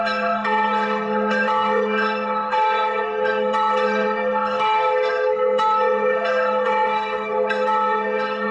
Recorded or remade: remade